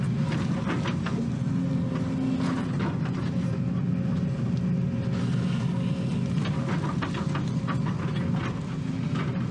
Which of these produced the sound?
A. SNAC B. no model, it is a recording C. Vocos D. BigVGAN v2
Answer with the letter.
B